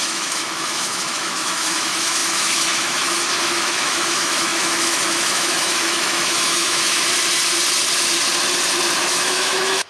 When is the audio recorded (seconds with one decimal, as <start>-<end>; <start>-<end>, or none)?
7.1-9.0